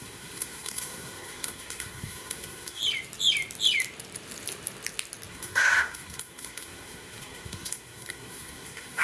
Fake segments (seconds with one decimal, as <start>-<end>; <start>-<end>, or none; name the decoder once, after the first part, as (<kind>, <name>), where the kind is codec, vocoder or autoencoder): 0.0-2.8 (codec, SNAC); 5.3-9.0